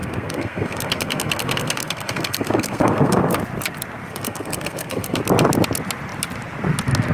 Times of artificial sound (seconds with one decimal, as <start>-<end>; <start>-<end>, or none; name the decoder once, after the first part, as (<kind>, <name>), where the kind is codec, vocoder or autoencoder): 0.0-3.4 (codec, SNAC); 4.1-5.2